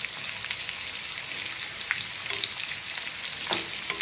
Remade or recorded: recorded